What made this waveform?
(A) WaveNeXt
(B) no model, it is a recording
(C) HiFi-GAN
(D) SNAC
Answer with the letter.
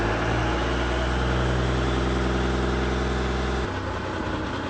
B